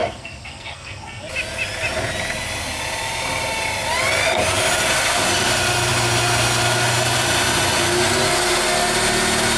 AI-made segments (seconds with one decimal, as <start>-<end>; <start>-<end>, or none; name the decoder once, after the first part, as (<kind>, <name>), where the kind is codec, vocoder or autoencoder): 0.0-1.2 (codec, SNAC)